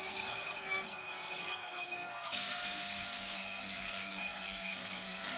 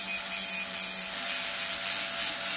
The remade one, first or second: first